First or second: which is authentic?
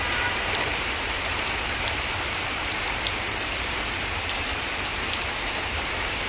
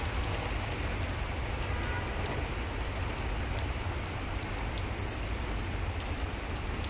second